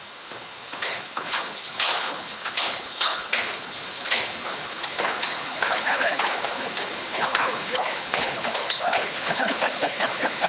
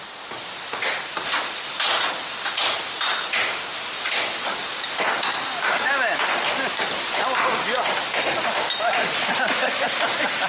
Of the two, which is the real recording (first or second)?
second